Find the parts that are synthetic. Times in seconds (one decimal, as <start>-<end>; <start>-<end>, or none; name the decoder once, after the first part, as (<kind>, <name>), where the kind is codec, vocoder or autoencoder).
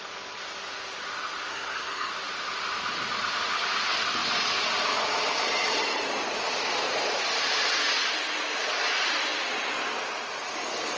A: 1.5-2.1 (codec, SNAC)